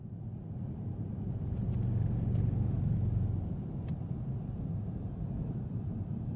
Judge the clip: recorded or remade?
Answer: recorded